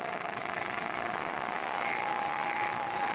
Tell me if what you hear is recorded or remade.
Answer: remade